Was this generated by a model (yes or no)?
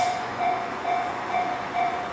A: yes